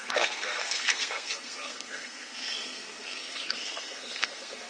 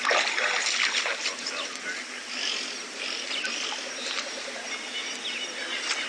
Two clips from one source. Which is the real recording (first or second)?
second